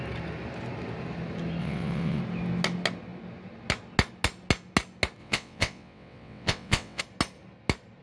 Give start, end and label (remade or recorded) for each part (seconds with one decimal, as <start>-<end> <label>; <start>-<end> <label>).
0.0-1.6 recorded; 1.6-2.2 remade; 2.2-5.2 recorded; 5.2-7.0 remade; 7.0-8.0 recorded